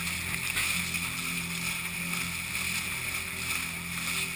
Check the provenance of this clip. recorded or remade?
recorded